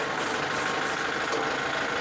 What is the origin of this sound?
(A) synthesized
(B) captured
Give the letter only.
B